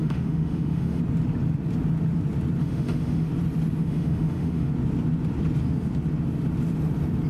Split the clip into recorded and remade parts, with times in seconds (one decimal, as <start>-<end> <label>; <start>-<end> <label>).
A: 0.0-1.0 remade; 1.0-2.6 recorded; 2.6-3.3 remade; 3.3-3.8 recorded; 3.8-4.7 remade; 4.7-7.3 recorded